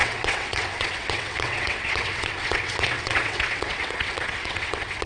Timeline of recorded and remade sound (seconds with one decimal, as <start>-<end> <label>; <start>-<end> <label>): 0.0-5.1 remade